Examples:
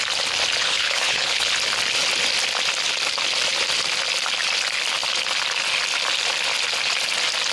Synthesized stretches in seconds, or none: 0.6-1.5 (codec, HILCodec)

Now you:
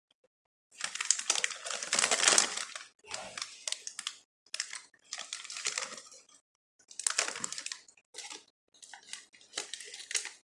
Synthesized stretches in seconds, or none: 4.4-9.0 (vocoder, BigVGAN v2)

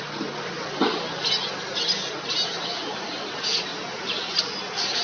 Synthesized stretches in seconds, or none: none

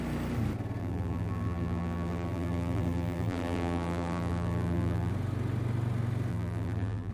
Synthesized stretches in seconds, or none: 0.8-5.1 (vocoder, BigVGAN v2); 6.3-7.1

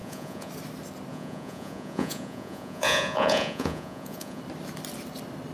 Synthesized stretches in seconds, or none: 0.0-0.5 (vocoder, Vocos); 1.1-4.4

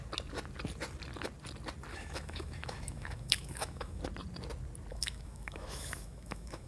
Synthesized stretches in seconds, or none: 1.9-4.0 (autoencoder, DAC-VAE); 4.9-6.7

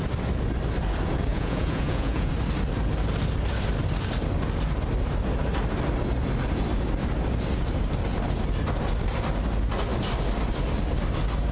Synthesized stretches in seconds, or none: 1.3-2.3 (vocoder, Vocos)